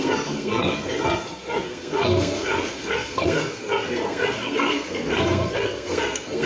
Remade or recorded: remade